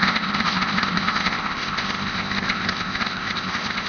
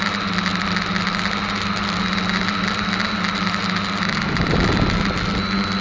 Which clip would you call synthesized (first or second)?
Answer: first